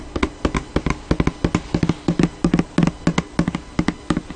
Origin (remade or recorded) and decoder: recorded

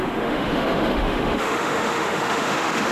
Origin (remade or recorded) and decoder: remade, autoencoder, DAC-VAE